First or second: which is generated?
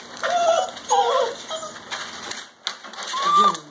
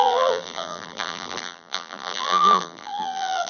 second